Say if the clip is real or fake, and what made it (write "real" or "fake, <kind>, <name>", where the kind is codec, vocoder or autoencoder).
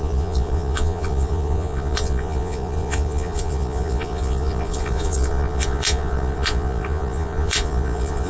fake, vocoder, Vocos